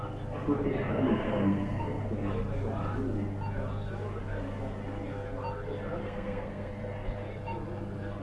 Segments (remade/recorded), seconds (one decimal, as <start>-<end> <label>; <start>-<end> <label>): 0.0-0.9 recorded; 0.9-2.0 remade; 2.0-6.0 recorded; 6.0-6.7 remade; 6.7-8.2 recorded